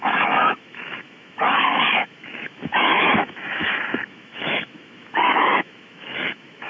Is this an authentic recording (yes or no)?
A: no